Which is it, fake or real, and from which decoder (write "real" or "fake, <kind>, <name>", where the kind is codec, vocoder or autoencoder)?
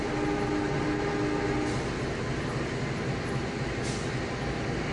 real